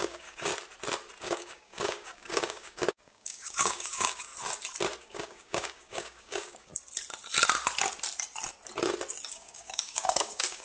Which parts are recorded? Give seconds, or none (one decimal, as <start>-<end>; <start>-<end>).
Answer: 0.5-1.2; 4.3-5.0; 6.7-9.3